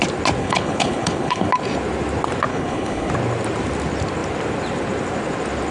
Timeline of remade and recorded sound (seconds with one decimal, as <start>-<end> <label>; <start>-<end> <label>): 0.0-0.4 recorded; 0.4-1.5 remade; 1.5-2.5 recorded; 2.5-3.1 remade; 3.1-5.7 recorded